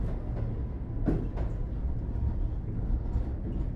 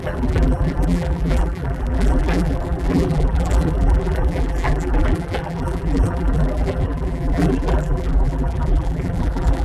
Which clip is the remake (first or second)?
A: second